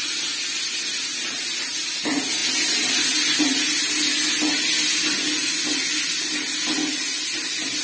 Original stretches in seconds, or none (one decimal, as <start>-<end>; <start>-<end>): 0.0-7.8